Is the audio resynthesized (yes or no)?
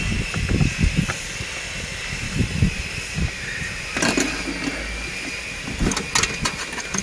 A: no